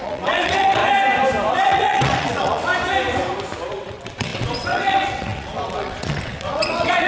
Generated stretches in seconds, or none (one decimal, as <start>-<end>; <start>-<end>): 0.0-0.8; 1.5-2.7; 3.7-7.1